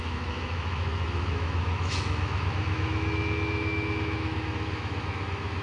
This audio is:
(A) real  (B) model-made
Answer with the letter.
B